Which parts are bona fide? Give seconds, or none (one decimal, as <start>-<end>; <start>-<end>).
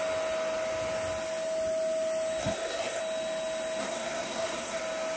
0.0-2.4; 3.0-3.8; 4.8-5.2